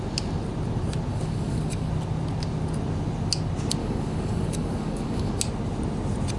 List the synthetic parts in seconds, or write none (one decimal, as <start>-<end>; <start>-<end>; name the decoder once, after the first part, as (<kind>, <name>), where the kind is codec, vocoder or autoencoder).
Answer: 1.1-1.9 (codec, DAC); 3.8-5.3